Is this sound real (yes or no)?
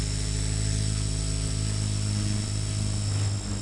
yes